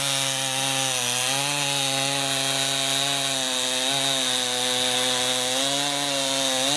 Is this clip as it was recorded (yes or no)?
yes